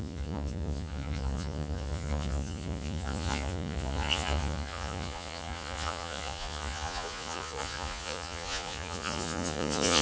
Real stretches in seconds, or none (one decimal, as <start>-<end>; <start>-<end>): none